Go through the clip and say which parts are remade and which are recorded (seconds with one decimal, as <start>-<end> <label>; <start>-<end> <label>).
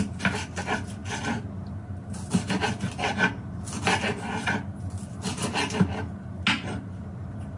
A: 0.0-7.6 recorded